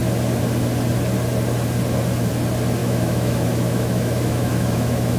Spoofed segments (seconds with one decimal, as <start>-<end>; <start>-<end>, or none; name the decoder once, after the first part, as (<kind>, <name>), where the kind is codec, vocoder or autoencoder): 2.8-5.2 (autoencoder, DAC-VAE)